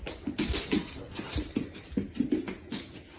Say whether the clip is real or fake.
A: fake